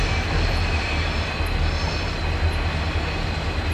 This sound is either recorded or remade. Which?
recorded